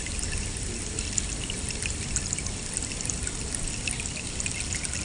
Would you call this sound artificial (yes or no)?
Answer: no